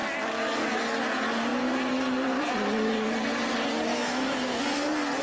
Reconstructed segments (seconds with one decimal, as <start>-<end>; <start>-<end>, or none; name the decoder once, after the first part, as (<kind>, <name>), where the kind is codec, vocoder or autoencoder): 3.9-4.6 (autoencoder, DAC-VAE)